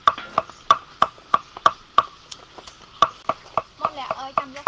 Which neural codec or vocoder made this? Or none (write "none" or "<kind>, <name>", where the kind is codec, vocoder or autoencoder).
none